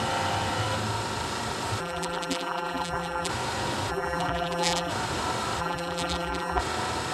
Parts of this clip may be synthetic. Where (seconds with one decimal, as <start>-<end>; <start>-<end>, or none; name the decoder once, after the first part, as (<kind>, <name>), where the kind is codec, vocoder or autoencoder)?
1.8-3.3 (vocoder, BigVGAN v2); 3.9-4.9; 5.6-6.6